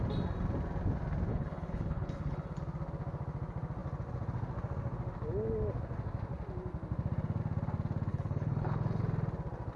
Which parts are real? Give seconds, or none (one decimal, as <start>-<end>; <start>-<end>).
0.0-1.3; 2.6-8.1; 9.0-9.8

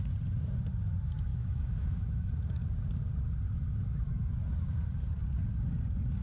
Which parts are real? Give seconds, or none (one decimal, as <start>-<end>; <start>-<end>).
0.0-1.3; 2.3-6.2

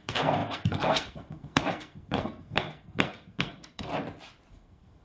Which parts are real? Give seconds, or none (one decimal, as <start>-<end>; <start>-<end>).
3.9-4.5

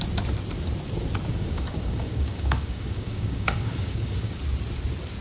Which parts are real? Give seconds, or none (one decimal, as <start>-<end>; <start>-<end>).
0.0-1.3; 4.4-5.2

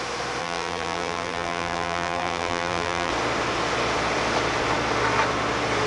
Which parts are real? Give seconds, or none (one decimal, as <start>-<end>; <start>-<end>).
0.0-0.4; 3.1-5.9

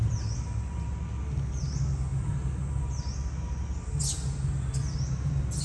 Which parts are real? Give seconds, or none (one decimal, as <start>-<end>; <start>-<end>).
0.0-5.6